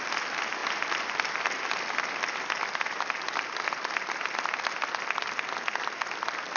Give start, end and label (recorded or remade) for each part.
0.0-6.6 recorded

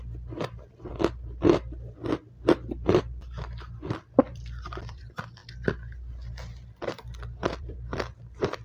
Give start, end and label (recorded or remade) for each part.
0.0-0.9 remade; 0.9-3.0 recorded; 3.0-5.4 remade; 5.4-7.6 recorded; 7.6-8.6 remade